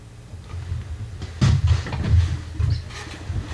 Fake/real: real